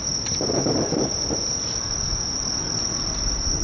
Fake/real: real